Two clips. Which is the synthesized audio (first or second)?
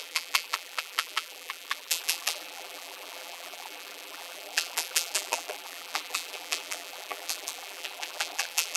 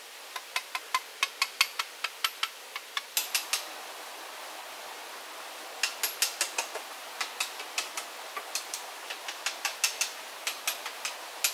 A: first